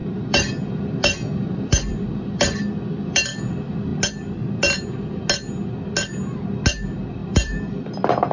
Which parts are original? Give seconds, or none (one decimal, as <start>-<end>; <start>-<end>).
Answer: 3.5-7.2; 7.9-8.3